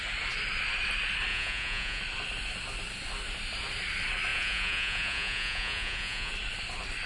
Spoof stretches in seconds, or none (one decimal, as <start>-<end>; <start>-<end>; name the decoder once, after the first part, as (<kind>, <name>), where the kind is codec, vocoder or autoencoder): 1.3-2.0 (vocoder, Vocos); 4.3-6.3